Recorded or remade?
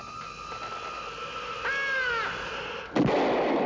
recorded